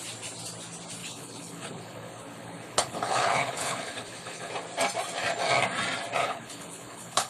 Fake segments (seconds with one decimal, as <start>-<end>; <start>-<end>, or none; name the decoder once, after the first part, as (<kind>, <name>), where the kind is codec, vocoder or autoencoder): 1.0-4.5 (codec, HILCodec); 6.2-7.3